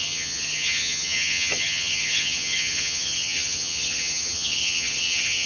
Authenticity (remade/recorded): remade